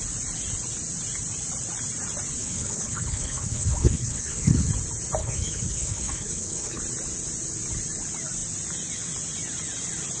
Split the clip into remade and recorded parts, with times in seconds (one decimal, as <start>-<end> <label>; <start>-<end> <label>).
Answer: 0.0-2.4 recorded; 2.4-4.7 remade; 4.7-5.2 recorded; 5.2-6.8 remade; 6.8-10.2 recorded